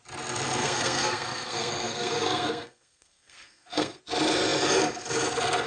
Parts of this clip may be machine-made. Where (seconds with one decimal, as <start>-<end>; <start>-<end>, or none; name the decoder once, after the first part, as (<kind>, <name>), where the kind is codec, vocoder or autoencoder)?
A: 0.6-4.0 (codec, SNAC)